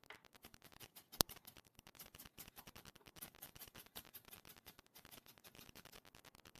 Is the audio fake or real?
fake